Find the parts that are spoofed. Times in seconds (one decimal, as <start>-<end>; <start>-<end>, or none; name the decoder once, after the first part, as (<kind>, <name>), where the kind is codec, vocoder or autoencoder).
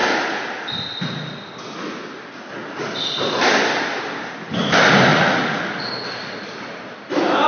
5.1-5.8 (vocoder, Vocos)